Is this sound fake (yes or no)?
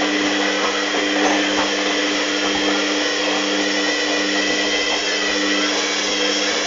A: no